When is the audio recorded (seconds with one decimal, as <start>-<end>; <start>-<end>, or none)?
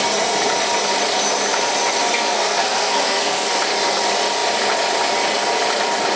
0.0-2.0; 3.6-6.2